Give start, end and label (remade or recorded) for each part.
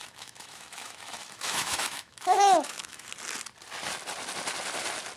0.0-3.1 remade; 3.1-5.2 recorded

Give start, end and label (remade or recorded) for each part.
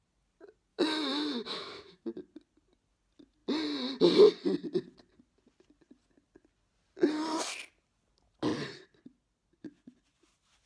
0.0-0.7 recorded; 0.7-2.0 remade; 2.0-10.7 recorded